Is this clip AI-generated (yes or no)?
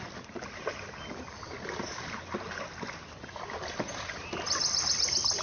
no